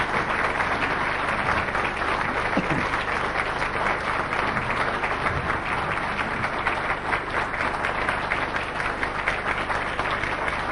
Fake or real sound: real